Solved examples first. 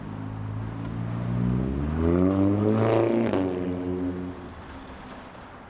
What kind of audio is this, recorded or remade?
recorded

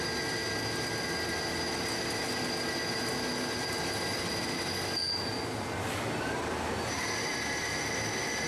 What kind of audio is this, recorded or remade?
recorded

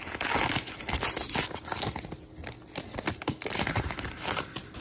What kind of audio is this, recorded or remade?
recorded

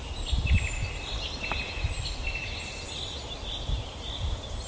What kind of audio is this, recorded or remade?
recorded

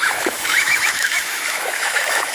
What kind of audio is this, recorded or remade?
remade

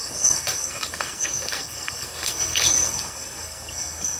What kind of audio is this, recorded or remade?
remade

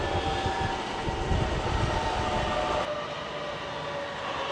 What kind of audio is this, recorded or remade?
recorded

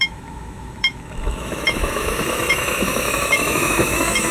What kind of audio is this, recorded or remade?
remade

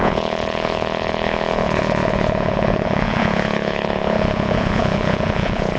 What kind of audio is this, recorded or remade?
remade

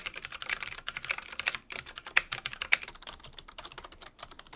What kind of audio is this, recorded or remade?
remade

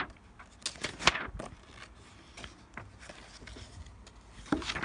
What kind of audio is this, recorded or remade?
recorded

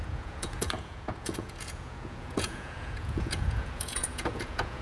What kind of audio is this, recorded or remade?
remade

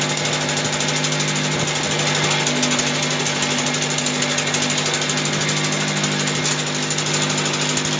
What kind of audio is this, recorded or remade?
recorded